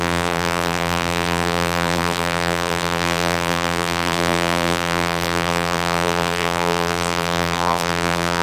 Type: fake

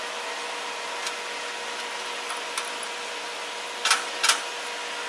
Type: real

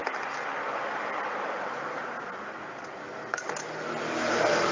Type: real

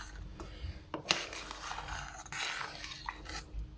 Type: real